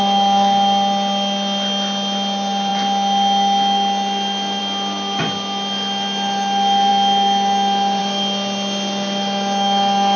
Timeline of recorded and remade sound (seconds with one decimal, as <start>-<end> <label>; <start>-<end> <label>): 0.0-10.2 recorded